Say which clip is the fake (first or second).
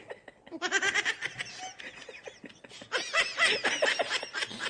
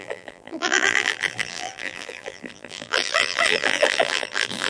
second